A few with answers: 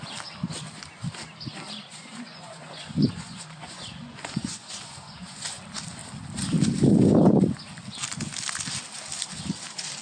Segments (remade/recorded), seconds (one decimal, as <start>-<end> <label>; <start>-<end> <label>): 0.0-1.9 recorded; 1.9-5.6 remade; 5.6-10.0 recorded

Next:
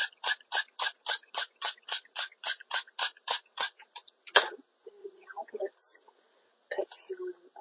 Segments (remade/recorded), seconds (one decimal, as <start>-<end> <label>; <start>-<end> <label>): 0.0-4.6 remade; 4.6-5.0 recorded; 5.0-7.1 remade; 7.1-7.6 recorded

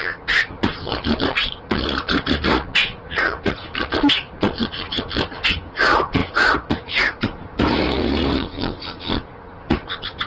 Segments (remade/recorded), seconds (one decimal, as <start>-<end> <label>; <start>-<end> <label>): 0.0-10.3 remade

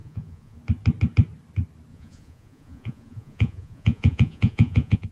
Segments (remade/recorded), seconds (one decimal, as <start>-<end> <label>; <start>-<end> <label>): 0.0-0.6 remade; 0.6-1.9 recorded; 1.9-5.1 remade

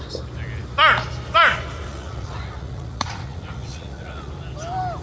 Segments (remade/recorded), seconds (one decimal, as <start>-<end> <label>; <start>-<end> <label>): 0.0-1.9 recorded; 1.9-4.3 remade; 4.3-5.0 recorded

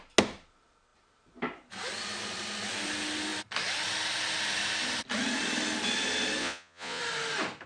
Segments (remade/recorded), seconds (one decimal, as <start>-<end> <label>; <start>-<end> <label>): 0.0-6.4 recorded; 6.4-7.0 remade; 7.0-7.7 recorded

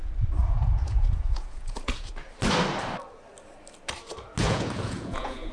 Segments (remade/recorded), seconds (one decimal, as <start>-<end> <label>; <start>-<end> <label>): 0.0-0.4 recorded; 0.4-2.1 remade; 2.1-4.4 recorded; 4.4-5.5 remade

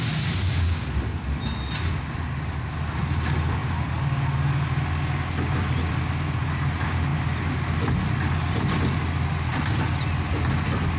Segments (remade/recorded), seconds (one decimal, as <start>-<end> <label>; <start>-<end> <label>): 0.0-11.0 recorded